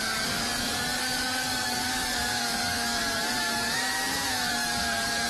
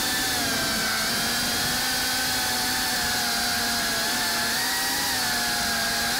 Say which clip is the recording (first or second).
second